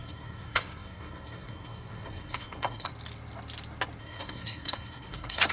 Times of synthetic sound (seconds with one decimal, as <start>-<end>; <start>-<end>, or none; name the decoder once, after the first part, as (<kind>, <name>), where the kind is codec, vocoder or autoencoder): 0.0-2.9 (codec, SNAC); 4.0-5.5